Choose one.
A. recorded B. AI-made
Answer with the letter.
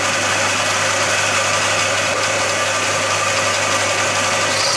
A